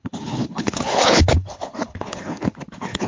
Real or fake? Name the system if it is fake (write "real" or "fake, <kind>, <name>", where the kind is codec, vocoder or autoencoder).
fake, codec, HILCodec